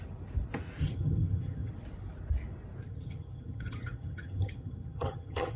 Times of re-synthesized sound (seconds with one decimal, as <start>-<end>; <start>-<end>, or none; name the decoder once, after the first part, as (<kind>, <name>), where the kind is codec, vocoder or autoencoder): 0.8-1.7 (vocoder, HiFi-GAN); 2.8-5.6